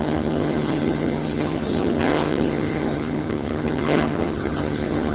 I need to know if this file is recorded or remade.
remade